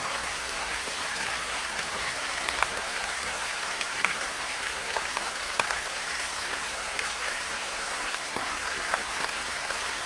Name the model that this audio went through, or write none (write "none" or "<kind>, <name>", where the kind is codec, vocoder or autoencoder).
codec, SNAC